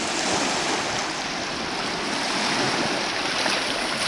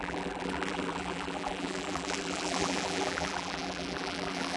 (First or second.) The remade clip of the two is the second